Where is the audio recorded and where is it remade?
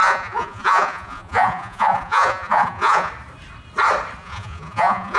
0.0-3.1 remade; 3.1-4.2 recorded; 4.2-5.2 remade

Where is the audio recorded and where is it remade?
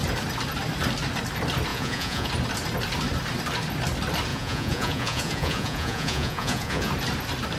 0.0-1.7 recorded; 1.7-2.3 remade; 2.3-4.3 recorded; 4.3-6.9 remade; 6.9-7.6 recorded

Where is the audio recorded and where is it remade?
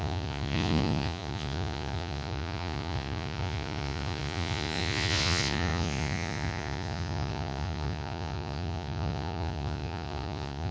0.0-10.7 remade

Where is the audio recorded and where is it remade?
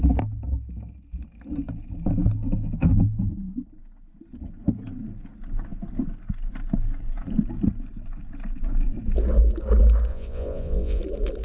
0.0-10.1 recorded; 10.1-11.0 remade; 11.0-11.4 recorded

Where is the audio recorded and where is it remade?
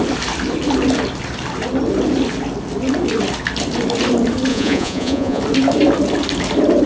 0.0-4.5 recorded; 4.5-5.4 remade; 5.4-6.9 recorded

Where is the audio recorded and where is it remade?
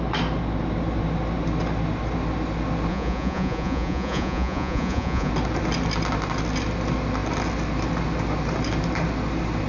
0.0-2.9 recorded; 2.9-5.3 remade; 5.3-9.7 recorded